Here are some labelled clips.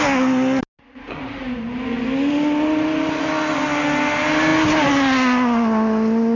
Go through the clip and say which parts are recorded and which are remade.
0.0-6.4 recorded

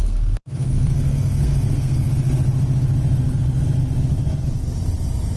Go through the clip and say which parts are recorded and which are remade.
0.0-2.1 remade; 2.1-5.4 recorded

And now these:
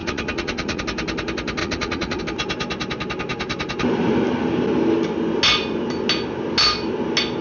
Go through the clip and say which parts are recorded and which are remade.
0.0-0.8 remade; 0.8-1.6 recorded; 1.6-2.2 remade; 2.2-7.4 recorded

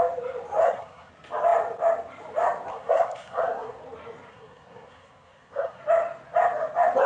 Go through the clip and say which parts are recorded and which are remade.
0.0-0.6 recorded; 0.6-1.1 remade; 1.1-2.7 recorded; 2.7-3.8 remade; 3.8-4.3 recorded; 4.3-5.8 remade; 5.8-7.1 recorded

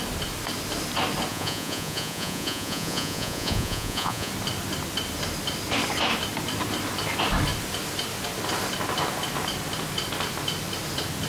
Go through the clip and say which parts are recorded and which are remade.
0.0-1.3 recorded; 1.3-4.3 remade; 4.3-11.3 recorded